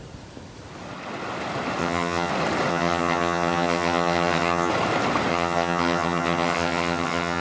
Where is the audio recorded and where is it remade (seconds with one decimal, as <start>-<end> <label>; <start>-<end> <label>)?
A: 0.0-1.8 recorded; 1.8-2.3 remade; 2.3-2.7 recorded; 2.7-4.7 remade; 4.7-5.3 recorded; 5.3-7.4 remade